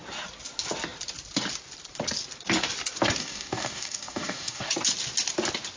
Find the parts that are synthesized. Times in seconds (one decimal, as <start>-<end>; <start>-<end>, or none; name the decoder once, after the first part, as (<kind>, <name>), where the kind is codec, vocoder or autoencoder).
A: 3.2-4.7 (codec, DAC)